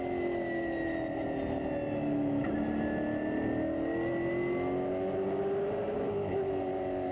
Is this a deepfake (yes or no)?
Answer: no